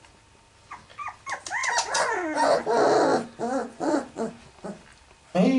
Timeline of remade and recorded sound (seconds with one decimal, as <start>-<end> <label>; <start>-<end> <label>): 0.0-1.6 recorded; 1.6-2.6 remade; 2.6-3.6 recorded; 3.6-4.3 remade; 4.3-5.6 recorded

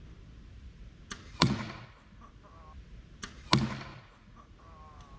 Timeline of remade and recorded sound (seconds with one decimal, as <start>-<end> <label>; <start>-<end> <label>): 0.0-1.2 recorded; 1.2-1.9 remade; 1.9-3.9 recorded; 3.9-4.6 remade; 4.6-5.2 recorded

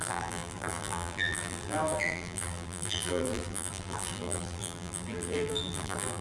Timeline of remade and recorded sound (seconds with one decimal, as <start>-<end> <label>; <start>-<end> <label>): 0.0-6.2 remade

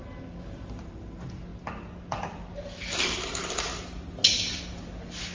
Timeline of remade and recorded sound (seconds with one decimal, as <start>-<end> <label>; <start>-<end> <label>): 0.0-5.3 recorded